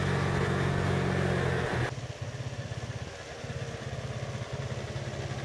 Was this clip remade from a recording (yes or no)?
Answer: no